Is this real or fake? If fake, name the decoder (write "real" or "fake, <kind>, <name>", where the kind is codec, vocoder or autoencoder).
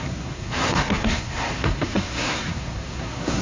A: fake, codec, SNAC